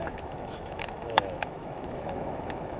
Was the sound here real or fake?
fake